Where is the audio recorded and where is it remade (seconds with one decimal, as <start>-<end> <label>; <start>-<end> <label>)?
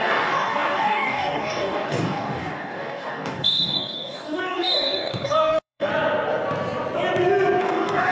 0.0-5.9 remade; 5.9-7.6 recorded; 7.6-8.1 remade